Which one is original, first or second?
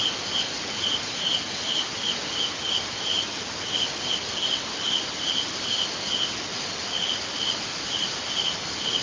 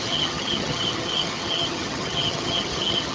first